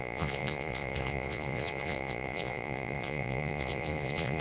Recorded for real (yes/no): no